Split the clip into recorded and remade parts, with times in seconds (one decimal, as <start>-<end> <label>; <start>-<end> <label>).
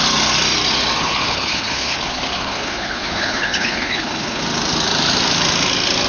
0.0-1.0 recorded; 1.0-4.4 remade; 4.4-6.1 recorded